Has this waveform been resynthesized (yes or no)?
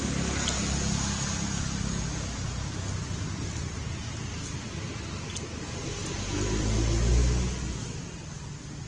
no